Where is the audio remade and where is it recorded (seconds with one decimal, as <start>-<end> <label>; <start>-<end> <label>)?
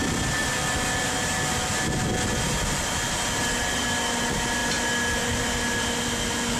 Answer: 0.0-6.6 recorded